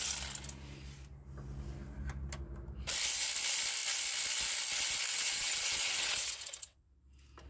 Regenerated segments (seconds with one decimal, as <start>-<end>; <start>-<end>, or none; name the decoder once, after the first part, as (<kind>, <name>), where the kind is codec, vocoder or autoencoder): 5.1-7.0 (vocoder, WaveNeXt)